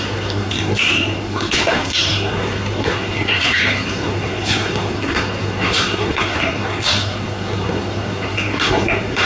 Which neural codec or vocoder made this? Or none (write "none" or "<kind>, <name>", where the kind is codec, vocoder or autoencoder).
codec, SNAC